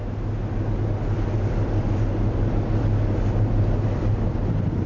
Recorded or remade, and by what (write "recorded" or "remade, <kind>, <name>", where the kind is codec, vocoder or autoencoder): recorded